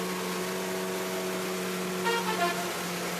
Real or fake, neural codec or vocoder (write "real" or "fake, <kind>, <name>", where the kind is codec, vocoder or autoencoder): real